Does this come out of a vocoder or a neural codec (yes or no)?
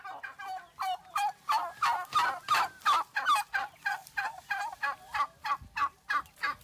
no